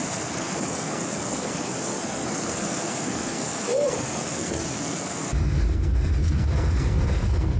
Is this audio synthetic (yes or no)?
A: yes